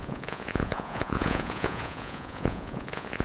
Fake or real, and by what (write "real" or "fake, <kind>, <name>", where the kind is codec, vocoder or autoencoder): fake, vocoder, Vocos